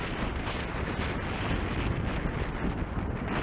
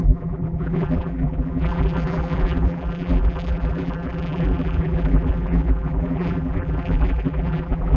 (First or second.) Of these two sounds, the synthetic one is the second